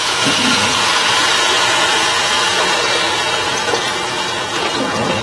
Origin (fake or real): fake